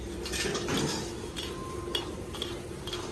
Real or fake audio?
real